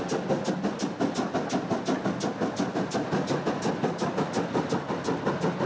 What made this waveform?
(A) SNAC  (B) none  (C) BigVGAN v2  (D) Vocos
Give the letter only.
B